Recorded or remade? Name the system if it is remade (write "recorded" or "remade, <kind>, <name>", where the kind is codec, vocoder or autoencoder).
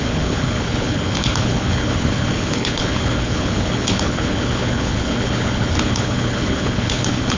remade, codec, HILCodec